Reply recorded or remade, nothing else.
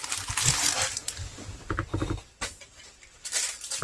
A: recorded